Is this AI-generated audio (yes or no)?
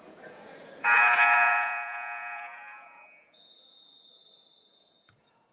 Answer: yes